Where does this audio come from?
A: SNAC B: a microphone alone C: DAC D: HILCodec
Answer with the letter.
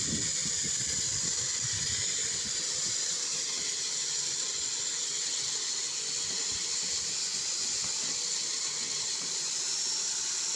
B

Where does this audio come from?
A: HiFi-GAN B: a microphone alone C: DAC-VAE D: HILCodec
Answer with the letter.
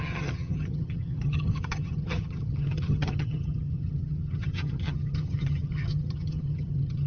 A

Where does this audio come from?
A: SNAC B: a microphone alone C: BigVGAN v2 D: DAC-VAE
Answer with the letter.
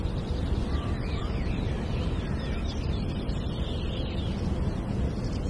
B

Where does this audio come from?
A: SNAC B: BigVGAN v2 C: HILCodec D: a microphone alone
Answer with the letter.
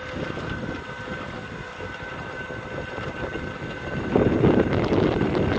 D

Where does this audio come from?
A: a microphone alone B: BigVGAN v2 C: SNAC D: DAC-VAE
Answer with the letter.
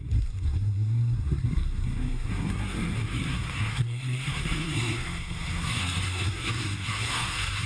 C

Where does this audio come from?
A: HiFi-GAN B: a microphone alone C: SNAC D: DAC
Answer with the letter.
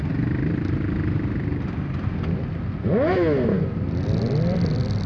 B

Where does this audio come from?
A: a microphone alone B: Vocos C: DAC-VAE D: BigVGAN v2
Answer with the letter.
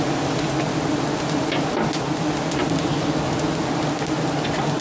A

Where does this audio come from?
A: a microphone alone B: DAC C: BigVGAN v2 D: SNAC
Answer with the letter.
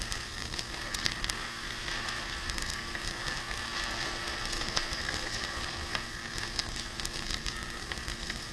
D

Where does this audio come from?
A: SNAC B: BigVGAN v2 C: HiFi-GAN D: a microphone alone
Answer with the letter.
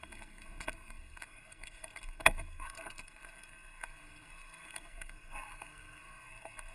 A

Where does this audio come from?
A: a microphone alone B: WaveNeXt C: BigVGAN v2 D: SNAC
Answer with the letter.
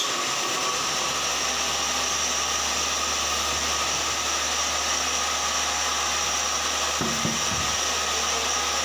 A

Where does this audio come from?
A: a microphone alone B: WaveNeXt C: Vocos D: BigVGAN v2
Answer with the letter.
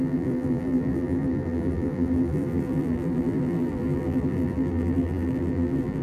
D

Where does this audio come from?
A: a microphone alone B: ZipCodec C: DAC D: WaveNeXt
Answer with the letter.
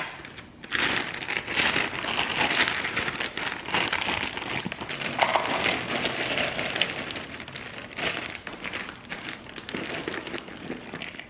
A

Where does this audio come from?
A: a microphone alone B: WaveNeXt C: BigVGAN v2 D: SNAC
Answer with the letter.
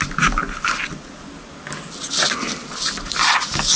A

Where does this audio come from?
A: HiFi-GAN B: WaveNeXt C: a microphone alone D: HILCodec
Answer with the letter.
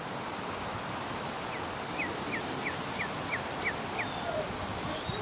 C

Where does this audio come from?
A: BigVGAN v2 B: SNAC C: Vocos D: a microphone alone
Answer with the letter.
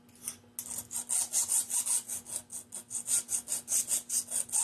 D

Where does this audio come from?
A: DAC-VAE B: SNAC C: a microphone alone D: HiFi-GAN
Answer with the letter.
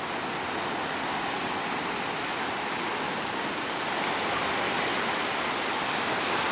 C